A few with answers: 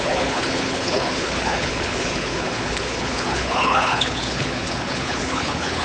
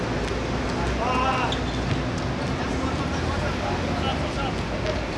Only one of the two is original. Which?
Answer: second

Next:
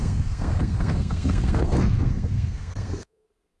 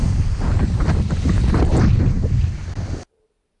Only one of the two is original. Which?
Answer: second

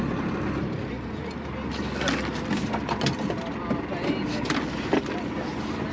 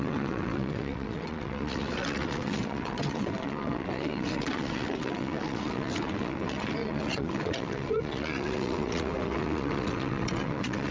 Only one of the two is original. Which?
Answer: first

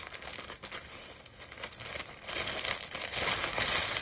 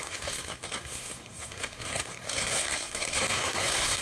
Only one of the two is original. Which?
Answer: first